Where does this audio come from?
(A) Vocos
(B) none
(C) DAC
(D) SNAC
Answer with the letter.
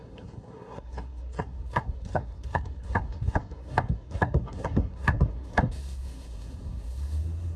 D